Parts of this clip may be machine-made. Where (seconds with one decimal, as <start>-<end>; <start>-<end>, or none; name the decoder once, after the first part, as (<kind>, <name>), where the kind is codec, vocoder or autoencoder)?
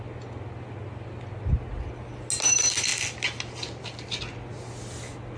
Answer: none